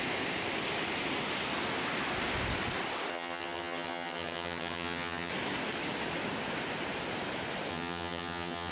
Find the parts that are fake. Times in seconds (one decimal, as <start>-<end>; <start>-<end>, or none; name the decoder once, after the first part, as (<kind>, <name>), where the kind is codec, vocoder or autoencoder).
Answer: 3.1-5.3 (vocoder, HiFi-GAN); 7.7-8.7

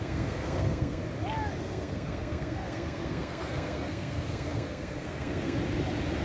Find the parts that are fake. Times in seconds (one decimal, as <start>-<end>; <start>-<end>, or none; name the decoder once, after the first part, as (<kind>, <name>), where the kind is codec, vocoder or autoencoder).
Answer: 0.0-1.0 (codec, SNAC); 1.6-5.6

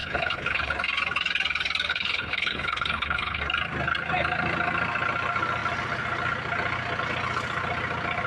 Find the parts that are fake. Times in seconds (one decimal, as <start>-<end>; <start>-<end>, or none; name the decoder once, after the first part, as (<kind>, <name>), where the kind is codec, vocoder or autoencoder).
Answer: 0.0-0.7 (codec, HILCodec); 1.9-3.4

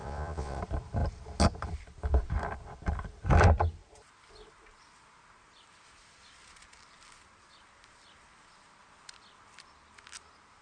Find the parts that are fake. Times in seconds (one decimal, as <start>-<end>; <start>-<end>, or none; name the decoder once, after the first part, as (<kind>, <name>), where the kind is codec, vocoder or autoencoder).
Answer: 0.0-0.6 (vocoder, Vocos)